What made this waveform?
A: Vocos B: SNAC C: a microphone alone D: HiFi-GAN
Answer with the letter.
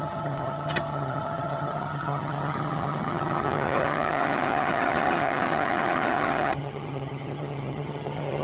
D